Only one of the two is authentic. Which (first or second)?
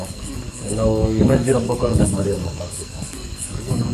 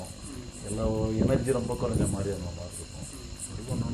second